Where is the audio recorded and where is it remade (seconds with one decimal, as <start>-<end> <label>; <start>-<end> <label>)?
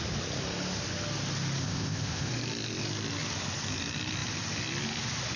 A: 0.0-1.6 recorded; 1.6-2.3 remade; 2.3-5.4 recorded